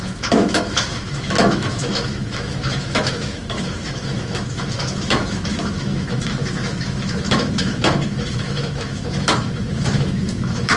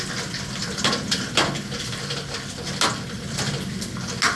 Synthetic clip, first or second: first